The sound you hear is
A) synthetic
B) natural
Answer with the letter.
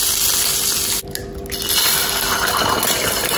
B